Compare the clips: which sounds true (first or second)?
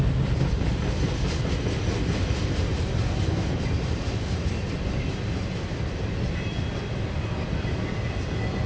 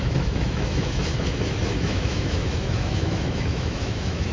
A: first